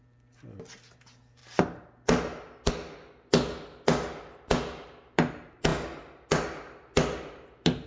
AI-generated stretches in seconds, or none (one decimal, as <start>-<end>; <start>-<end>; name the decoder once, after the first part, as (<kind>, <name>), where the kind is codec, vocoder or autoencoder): none